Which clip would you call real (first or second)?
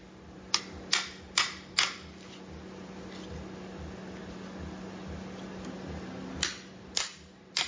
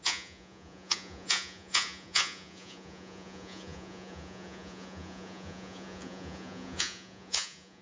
first